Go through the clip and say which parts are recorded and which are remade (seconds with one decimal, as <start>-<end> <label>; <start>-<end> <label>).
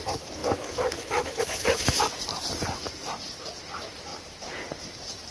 0.0-0.4 recorded; 0.4-2.0 remade; 2.0-5.3 recorded